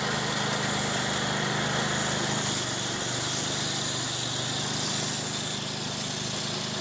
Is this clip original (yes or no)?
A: yes